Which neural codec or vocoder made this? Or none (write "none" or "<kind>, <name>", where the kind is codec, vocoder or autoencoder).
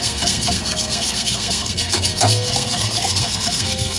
codec, SNAC